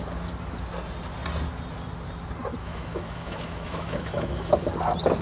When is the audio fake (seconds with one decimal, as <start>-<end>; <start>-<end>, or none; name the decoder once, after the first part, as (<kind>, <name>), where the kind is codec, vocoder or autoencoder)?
2.6-4.5 (autoencoder, DAC-VAE)